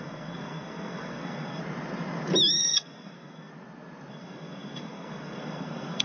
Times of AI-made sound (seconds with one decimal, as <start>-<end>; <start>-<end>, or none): 0.0-1.6; 2.6-3.5; 4.1-6.0